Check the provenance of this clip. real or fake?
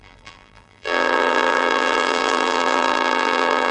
fake